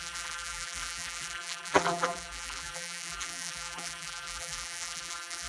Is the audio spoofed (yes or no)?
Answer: yes